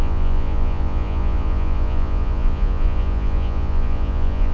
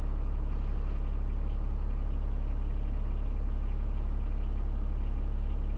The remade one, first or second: first